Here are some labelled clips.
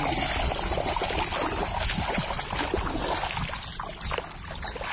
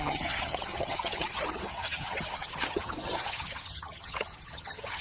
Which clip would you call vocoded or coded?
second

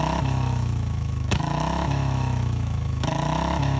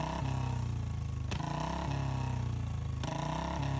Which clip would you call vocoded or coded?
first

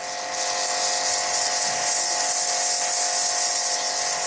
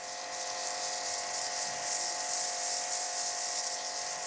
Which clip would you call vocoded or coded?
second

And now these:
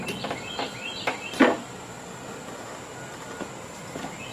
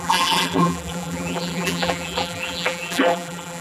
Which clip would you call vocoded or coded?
second